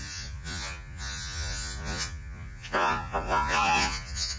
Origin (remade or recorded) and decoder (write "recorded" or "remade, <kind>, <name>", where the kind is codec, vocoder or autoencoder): remade, vocoder, Vocos